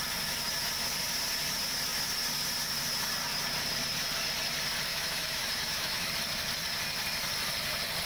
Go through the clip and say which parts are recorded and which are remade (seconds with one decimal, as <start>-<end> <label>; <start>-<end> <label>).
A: 0.0-4.9 recorded; 4.9-6.1 remade; 6.1-8.1 recorded